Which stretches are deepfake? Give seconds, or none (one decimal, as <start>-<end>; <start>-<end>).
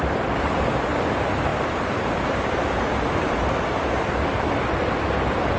1.5-4.9